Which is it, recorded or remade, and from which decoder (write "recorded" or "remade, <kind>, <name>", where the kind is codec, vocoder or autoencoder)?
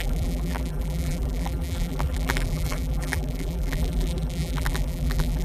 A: remade, vocoder, BigVGAN v2